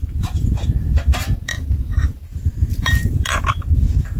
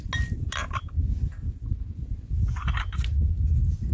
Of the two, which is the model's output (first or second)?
first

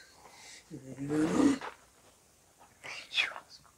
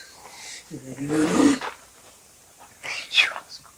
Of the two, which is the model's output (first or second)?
second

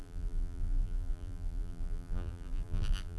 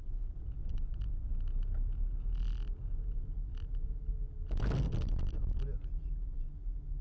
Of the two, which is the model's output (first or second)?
first